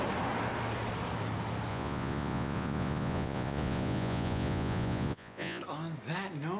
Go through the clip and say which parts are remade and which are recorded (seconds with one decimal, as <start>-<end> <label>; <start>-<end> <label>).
0.0-1.7 recorded; 1.7-5.6 remade; 5.6-6.6 recorded